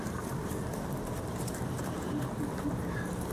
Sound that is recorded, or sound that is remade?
remade